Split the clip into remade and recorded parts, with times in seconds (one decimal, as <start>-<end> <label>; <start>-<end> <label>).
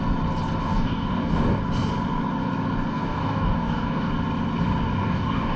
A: 0.0-0.6 recorded; 0.6-1.6 remade; 1.6-2.9 recorded; 2.9-4.1 remade; 4.1-5.0 recorded; 5.0-5.6 remade